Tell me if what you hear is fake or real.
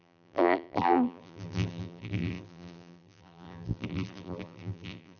fake